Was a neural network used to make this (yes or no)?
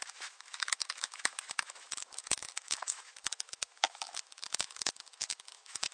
yes